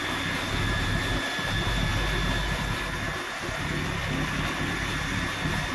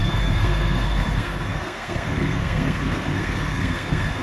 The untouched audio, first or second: first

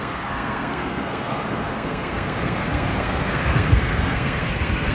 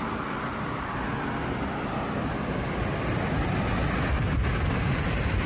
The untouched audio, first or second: second